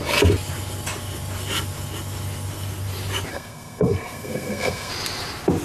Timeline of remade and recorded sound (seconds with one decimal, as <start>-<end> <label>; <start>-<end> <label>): 0.0-3.3 recorded; 3.3-4.9 remade; 4.9-5.6 recorded